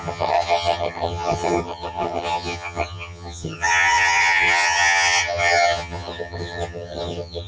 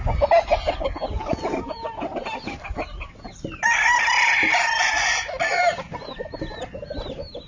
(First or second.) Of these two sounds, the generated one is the first